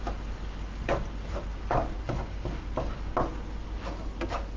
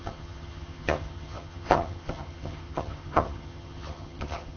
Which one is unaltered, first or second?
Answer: first